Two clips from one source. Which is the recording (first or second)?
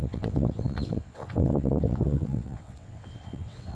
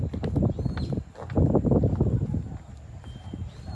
second